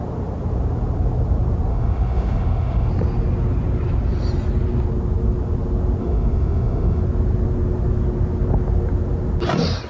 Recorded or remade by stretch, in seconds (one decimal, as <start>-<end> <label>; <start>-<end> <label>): 0.0-1.7 recorded; 1.7-2.9 remade; 2.9-6.0 recorded; 6.0-7.0 remade; 7.0-9.9 recorded